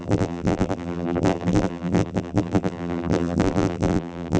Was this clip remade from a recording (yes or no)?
yes